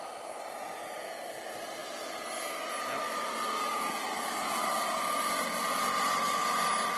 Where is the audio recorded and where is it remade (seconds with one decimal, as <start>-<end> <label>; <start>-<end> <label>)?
0.0-7.0 recorded

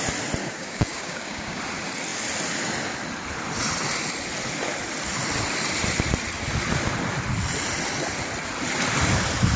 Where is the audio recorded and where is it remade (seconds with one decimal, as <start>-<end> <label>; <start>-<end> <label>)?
0.0-0.4 recorded; 0.4-1.6 remade; 1.6-9.6 recorded

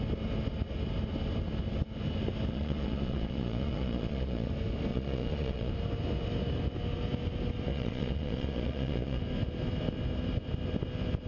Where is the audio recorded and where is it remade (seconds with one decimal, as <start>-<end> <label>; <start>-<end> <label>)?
0.0-2.5 recorded; 2.5-4.5 remade; 4.5-4.9 recorded; 4.9-5.7 remade; 5.7-7.7 recorded; 7.7-9.2 remade; 9.2-11.3 recorded

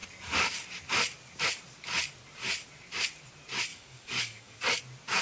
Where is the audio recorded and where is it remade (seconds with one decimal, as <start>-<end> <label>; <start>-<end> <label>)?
0.0-3.7 recorded; 3.7-4.8 remade; 4.8-5.2 recorded

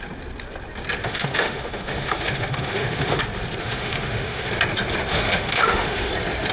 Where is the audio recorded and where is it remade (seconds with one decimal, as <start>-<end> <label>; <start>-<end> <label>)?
0.0-1.0 recorded; 1.0-3.2 remade; 3.2-3.6 recorded; 3.6-4.5 remade; 4.5-5.1 recorded; 5.1-6.1 remade; 6.1-6.5 recorded

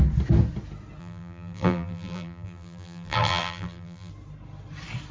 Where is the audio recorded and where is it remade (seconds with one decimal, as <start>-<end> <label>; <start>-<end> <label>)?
0.0-1.0 recorded; 1.0-4.1 remade; 4.1-5.1 recorded